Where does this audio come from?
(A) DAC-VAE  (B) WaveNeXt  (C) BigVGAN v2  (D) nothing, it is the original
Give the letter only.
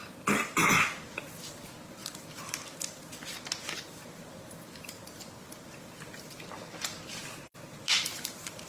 D